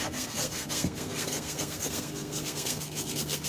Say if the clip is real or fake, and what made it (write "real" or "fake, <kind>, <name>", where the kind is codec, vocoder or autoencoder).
fake, codec, SNAC